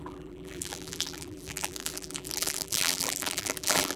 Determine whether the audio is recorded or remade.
remade